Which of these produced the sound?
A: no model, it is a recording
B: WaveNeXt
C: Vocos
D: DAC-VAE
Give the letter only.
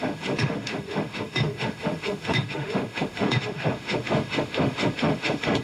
D